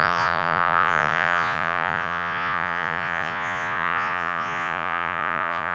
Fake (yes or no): yes